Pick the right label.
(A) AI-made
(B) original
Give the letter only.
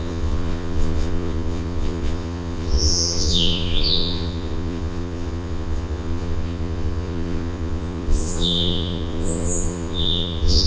A